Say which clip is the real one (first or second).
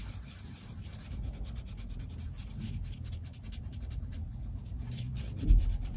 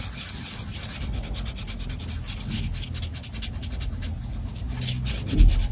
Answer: second